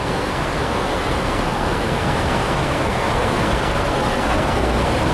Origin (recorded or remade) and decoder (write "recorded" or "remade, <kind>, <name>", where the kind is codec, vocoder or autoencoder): remade, codec, SNAC